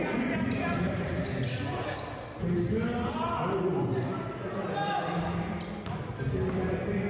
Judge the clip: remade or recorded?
recorded